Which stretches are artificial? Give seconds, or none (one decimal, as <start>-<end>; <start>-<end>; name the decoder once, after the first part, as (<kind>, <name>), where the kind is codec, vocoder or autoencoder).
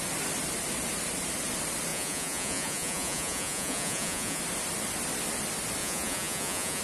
1.9-4.4 (vocoder, Vocos); 5.8-6.8